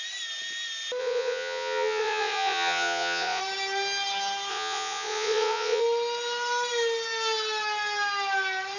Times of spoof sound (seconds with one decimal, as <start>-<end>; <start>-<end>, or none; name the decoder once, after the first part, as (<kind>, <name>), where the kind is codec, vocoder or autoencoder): 1.0-3.4 (vocoder, Vocos); 4.5-5.8

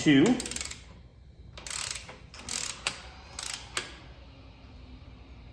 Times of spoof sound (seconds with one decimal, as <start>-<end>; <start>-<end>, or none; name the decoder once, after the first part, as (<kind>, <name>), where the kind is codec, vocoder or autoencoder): none

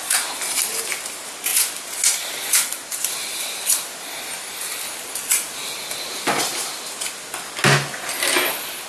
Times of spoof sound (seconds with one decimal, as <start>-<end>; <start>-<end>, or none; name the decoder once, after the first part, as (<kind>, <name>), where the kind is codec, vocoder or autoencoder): none

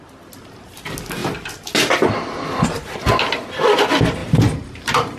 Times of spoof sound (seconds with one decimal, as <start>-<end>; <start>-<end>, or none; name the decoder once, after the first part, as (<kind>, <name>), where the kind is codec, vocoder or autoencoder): 4.2-5.2 (vocoder, BigVGAN v2)

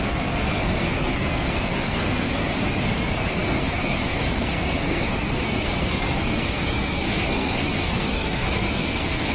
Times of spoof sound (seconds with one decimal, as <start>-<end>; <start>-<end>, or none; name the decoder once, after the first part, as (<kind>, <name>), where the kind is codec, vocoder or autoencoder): 0.0-9.3 (codec, SNAC)

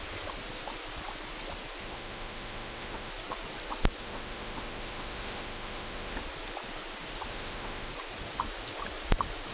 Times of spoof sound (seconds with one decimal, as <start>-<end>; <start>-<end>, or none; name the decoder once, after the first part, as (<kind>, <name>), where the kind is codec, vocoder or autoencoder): 1.8-3.1 (autoencoder, DAC-VAE); 4.0-6.2; 7.3-7.9

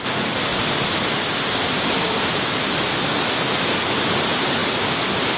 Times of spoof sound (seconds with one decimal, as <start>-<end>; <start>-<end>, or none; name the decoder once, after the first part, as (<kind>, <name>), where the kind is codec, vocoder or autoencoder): 0.0-0.5 (vocoder, BigVGAN v2); 3.7-4.6

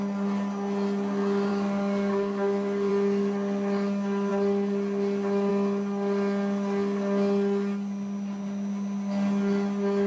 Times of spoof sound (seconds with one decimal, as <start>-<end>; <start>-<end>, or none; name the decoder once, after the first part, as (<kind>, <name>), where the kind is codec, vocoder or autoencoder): 1.5-2.9 (codec, DAC)